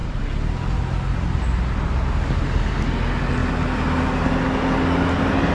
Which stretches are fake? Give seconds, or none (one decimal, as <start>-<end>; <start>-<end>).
none